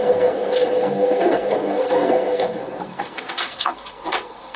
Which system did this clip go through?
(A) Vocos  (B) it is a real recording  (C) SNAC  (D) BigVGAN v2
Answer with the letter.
C